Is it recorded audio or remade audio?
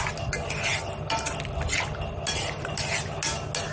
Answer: recorded